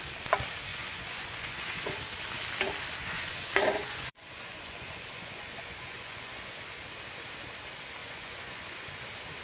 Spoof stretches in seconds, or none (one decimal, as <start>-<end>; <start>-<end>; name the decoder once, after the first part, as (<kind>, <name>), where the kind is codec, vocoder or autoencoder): 0.7-2.0 (vocoder, Vocos); 3.0-6.8; 8.0-9.0